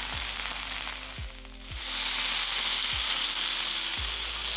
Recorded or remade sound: recorded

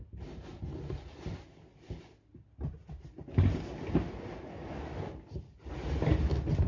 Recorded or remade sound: recorded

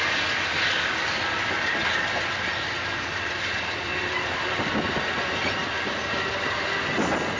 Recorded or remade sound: recorded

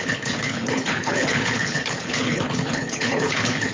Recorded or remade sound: remade